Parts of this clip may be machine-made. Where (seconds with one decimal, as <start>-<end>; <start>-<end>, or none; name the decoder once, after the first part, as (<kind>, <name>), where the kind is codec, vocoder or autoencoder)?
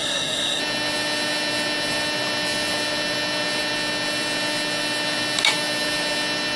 0.0-0.6 (codec, SNAC)